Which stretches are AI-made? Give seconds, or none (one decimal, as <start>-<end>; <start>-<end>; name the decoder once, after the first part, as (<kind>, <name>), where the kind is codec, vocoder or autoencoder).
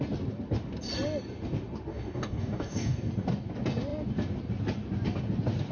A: 1.9-3.1 (codec, DAC)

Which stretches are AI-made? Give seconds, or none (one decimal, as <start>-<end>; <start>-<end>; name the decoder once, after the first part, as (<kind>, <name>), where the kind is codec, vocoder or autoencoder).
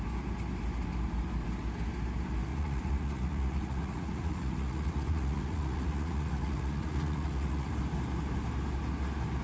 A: 2.5-7.7 (vocoder, Vocos)